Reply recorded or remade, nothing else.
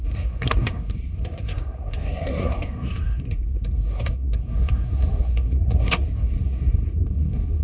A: remade